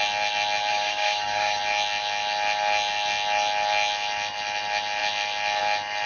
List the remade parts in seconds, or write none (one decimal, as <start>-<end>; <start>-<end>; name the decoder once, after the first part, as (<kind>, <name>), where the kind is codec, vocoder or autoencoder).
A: 0.7-1.6 (codec, DAC)